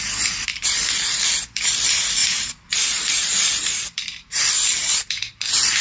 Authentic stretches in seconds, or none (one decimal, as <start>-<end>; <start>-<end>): 0.0-0.5; 1.6-2.2